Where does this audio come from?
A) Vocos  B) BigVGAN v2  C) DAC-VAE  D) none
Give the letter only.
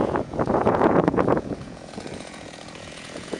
A